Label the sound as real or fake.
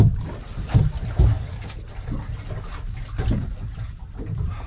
real